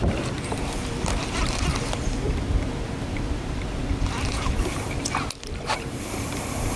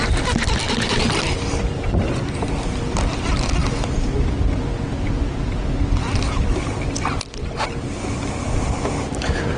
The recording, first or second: second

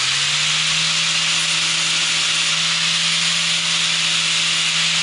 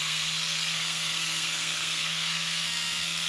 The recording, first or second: first